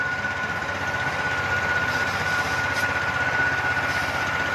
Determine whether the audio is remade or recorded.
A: recorded